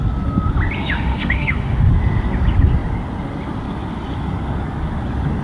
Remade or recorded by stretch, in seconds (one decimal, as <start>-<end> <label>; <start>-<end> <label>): 0.0-0.8 recorded; 0.8-1.9 remade; 1.9-5.4 recorded